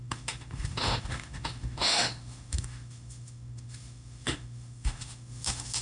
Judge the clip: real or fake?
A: fake